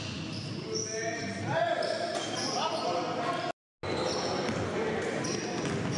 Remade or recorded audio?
recorded